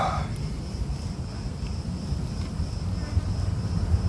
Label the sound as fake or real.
real